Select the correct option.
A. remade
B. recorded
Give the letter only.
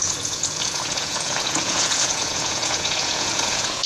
A